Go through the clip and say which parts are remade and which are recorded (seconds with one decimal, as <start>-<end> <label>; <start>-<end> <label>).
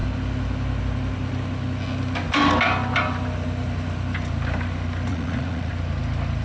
0.0-5.1 recorded; 5.1-5.7 remade; 5.7-6.4 recorded